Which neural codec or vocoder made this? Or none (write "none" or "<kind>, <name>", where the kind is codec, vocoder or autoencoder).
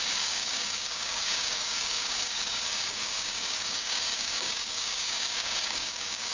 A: codec, DAC